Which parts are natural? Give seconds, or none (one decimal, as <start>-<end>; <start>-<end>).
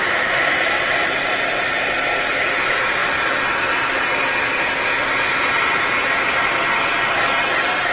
0.9-7.9